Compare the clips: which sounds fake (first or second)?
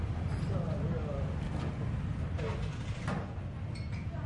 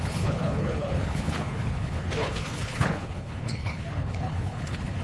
second